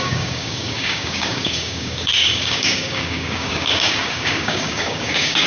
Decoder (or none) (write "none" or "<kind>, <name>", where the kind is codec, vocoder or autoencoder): codec, DAC